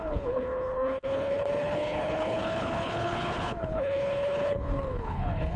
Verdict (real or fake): fake